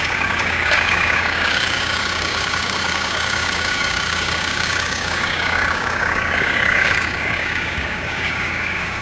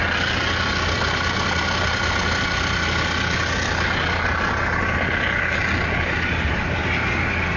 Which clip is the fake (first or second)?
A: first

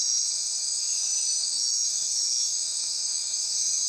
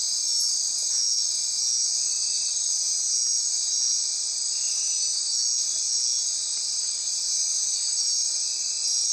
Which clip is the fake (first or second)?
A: first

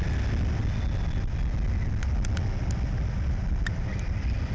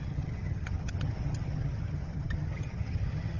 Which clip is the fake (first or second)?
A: second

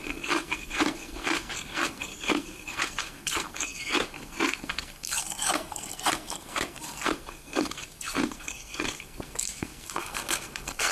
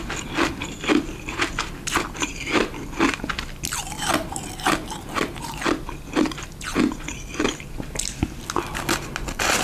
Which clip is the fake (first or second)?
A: first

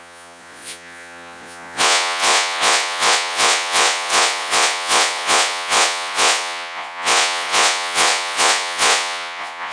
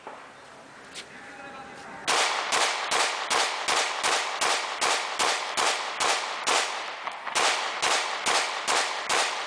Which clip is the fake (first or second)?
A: first